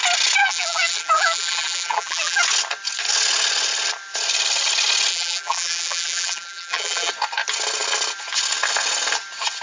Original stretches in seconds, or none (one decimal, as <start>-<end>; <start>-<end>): 0.0-0.4; 2.4-5.1; 7.1-9.6